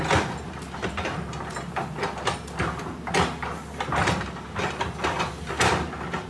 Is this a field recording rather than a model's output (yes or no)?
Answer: yes